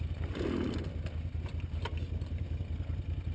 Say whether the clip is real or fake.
real